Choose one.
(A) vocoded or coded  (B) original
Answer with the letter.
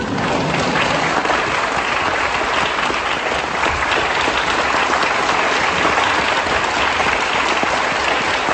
B